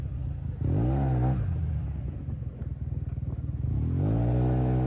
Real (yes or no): yes